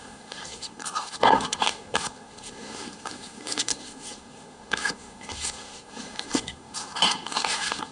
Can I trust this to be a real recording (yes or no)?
no